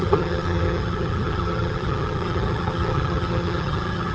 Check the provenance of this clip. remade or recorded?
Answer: remade